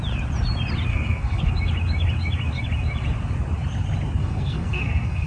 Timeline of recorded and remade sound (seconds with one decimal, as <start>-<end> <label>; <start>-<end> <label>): 0.0-0.9 recorded; 0.9-1.5 remade; 1.5-4.2 recorded; 4.2-5.3 remade